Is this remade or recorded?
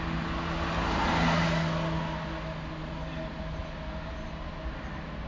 recorded